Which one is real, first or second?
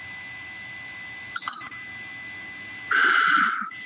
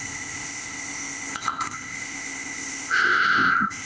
first